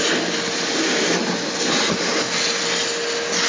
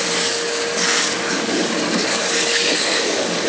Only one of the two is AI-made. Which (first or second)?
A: second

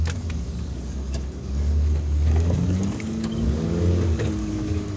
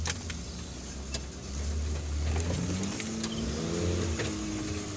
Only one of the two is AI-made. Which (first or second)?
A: first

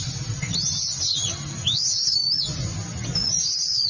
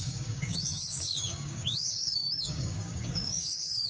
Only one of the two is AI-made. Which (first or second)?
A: second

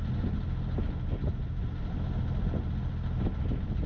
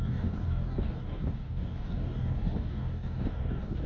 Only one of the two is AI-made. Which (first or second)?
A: second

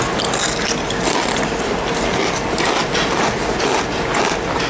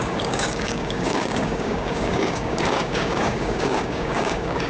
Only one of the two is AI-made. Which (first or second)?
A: second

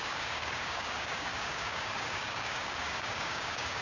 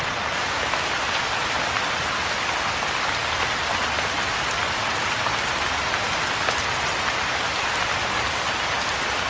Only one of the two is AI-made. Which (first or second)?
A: first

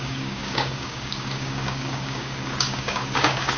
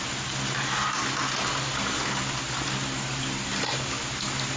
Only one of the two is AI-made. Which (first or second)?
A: first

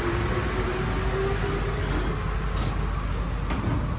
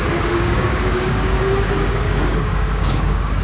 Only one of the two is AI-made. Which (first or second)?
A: second